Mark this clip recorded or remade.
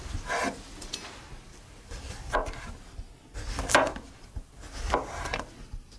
recorded